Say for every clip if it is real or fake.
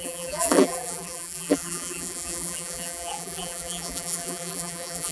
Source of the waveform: fake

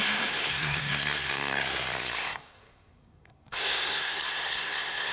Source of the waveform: fake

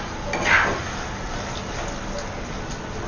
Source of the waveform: real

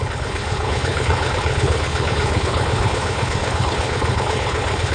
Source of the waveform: fake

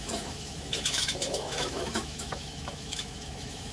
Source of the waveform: fake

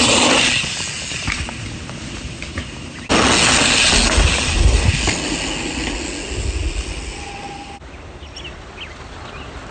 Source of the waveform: real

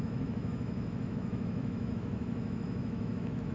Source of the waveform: fake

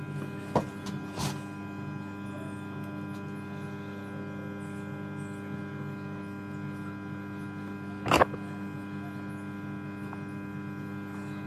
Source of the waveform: real